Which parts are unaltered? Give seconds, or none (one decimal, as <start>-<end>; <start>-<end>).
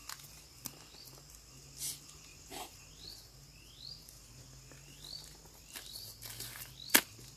0.0-2.3; 2.9-7.4